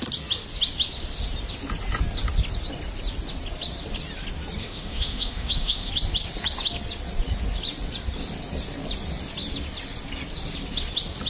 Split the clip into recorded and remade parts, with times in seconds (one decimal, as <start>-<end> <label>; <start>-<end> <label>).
0.0-4.6 recorded; 4.6-5.9 remade; 5.9-11.3 recorded